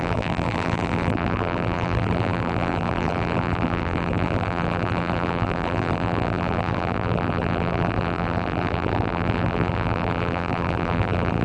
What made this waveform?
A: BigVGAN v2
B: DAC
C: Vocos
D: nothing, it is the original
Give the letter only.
A